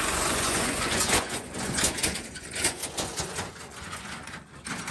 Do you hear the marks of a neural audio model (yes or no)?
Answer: yes